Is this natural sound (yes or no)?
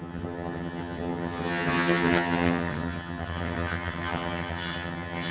no